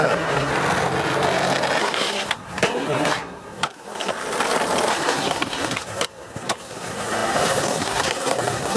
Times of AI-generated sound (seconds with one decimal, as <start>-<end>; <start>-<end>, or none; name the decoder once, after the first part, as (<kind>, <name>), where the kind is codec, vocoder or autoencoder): 0.0-0.5 (codec, SNAC); 1.8-4.1; 4.9-8.8